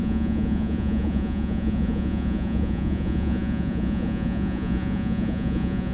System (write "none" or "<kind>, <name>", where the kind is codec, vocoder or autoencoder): vocoder, Vocos